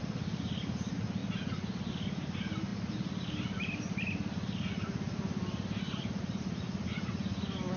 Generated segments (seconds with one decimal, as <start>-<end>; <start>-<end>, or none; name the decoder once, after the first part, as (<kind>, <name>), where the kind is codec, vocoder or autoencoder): none